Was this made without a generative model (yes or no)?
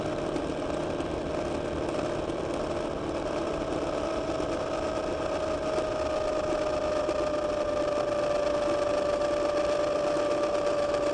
yes